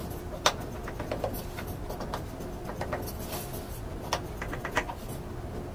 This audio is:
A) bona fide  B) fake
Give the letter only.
A